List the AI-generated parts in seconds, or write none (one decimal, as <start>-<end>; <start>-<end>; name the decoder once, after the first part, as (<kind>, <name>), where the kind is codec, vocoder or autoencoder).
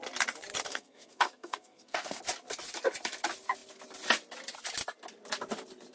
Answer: 0.7-2.2 (codec, SNAC)